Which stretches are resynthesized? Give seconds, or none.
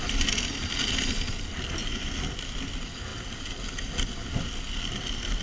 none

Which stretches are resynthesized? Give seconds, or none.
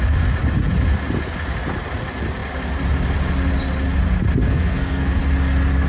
4.4-5.2 (codec, SNAC)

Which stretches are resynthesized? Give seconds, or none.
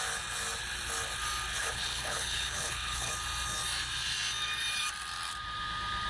1.5-3.1 (codec, HILCodec)